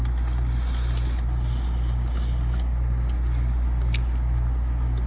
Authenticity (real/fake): real